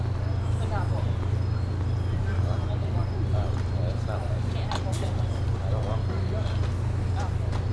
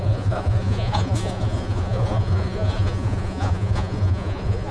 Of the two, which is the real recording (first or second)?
first